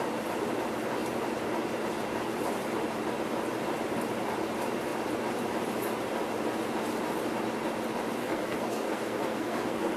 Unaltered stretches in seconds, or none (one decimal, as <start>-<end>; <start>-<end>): 0.0-8.2

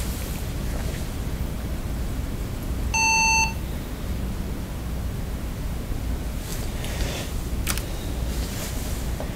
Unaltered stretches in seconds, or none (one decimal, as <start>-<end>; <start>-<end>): 0.0-9.4

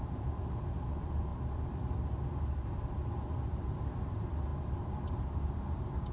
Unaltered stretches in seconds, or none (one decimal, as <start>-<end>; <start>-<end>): 0.0-6.1

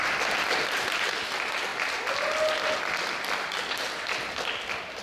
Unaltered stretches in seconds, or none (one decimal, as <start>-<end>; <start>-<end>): 0.0-5.0

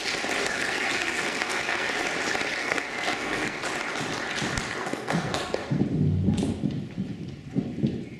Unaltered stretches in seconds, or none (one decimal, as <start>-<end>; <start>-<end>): 0.0-0.4; 1.9-2.6; 3.6-4.8; 5.8-8.2

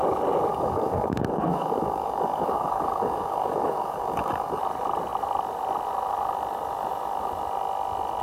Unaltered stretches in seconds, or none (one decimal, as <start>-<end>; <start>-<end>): 0.0-0.5; 4.6-8.2

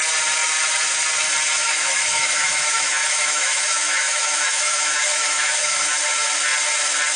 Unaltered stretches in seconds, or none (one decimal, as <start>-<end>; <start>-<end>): 0.0-1.6; 5.9-7.2